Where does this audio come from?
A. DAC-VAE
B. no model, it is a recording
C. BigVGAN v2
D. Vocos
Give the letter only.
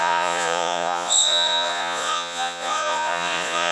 D